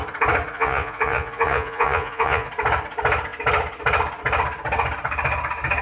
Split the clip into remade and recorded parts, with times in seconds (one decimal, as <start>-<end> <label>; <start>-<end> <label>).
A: 0.0-0.5 recorded; 0.5-2.5 remade; 2.5-5.8 recorded